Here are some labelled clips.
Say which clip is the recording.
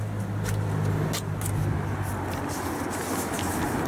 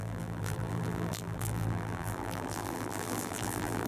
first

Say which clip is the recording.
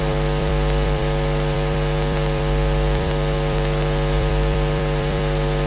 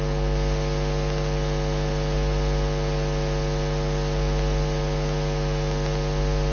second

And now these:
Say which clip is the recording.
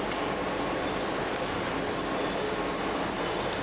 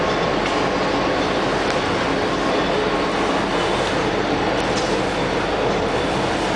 second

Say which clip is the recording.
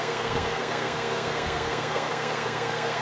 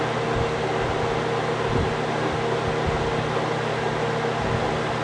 second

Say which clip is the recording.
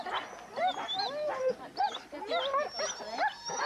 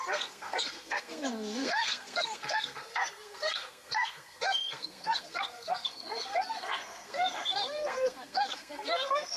first